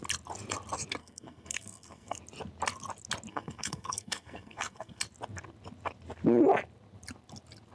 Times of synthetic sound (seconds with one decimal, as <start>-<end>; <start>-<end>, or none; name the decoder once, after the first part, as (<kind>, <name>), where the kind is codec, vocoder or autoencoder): 1.0-2.2 (codec, SNAC); 3.3-5.0